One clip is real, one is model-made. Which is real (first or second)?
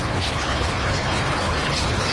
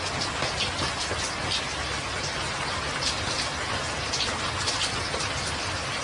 second